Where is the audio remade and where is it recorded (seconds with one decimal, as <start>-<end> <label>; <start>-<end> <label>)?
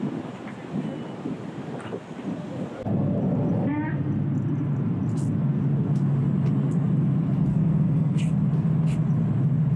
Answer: 0.0-7.5 recorded; 7.5-8.2 remade; 8.2-9.8 recorded